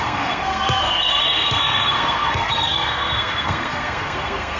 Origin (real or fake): fake